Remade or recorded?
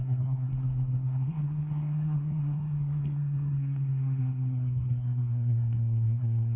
remade